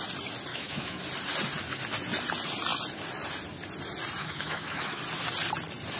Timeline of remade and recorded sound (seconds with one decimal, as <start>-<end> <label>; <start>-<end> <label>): 0.0-0.5 recorded; 0.5-1.0 remade; 1.0-4.2 recorded; 4.2-5.0 remade; 5.0-6.0 recorded